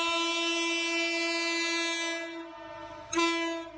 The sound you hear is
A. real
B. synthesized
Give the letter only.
A